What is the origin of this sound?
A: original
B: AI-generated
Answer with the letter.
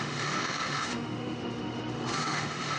B